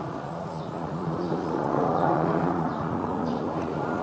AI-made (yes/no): yes